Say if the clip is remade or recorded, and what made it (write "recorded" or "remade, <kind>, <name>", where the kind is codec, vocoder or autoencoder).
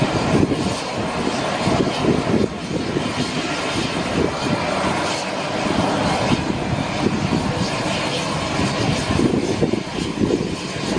recorded